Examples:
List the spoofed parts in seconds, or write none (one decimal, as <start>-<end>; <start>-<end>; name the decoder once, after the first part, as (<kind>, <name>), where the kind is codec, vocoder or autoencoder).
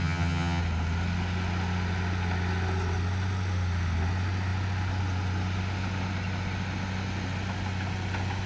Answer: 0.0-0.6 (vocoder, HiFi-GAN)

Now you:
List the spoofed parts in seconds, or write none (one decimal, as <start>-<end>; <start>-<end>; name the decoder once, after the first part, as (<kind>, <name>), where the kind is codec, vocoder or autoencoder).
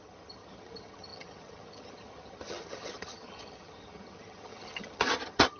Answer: 0.0-5.6 (vocoder, HiFi-GAN)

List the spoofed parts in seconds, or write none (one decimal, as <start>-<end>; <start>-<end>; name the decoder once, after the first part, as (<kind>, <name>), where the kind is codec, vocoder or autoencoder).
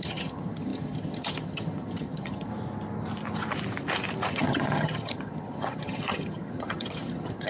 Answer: 0.0-2.5 (vocoder, HiFi-GAN); 4.3-7.5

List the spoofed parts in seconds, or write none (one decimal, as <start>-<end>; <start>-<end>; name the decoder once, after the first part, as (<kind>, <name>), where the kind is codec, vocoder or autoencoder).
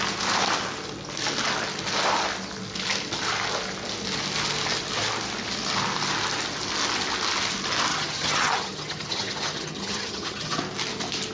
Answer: 7.9-10.6 (vocoder, HiFi-GAN)